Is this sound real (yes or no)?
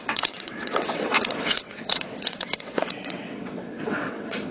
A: no